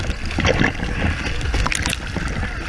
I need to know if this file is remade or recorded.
recorded